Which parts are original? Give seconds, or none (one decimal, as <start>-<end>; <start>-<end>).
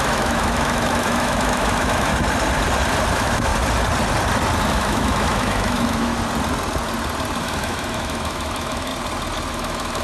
2.1-3.1; 3.5-4.7; 6.1-7.4; 8.9-9.5